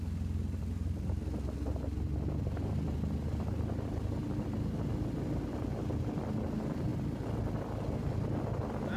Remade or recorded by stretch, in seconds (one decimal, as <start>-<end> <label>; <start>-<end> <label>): 0.0-9.0 recorded